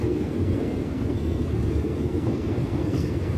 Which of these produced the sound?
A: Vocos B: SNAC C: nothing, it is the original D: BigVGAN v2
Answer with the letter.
B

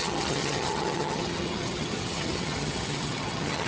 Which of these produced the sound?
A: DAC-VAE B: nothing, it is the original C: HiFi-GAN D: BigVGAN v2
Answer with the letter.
C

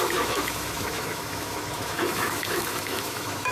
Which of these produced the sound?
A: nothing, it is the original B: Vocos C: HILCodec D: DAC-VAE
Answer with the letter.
D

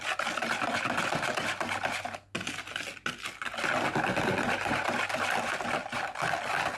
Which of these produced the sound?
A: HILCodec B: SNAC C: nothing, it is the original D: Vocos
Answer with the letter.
C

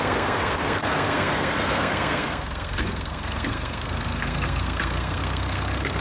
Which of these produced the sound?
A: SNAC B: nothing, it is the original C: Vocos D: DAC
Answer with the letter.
A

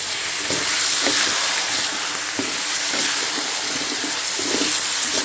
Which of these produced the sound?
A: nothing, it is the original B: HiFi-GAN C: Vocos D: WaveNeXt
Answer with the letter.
A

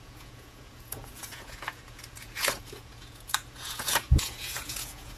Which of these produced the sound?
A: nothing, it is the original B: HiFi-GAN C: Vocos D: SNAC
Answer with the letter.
C